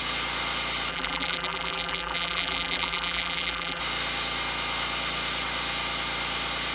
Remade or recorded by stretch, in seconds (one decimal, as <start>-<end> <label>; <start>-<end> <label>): 0.0-0.9 recorded; 0.9-3.8 remade; 3.8-6.7 recorded